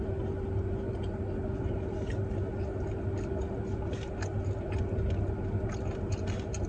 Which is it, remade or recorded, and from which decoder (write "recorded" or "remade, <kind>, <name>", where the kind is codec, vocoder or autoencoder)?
recorded